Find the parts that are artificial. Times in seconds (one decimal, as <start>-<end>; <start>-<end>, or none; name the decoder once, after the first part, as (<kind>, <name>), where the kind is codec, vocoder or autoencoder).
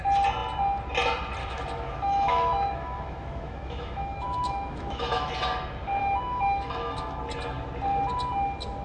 1.4-5.3 (autoencoder, DAC-VAE); 6.0-7.2